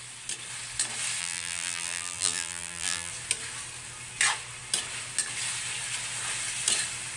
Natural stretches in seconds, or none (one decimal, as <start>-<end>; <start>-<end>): 0.0-1.2; 3.1-7.2